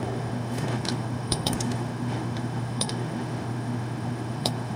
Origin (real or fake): fake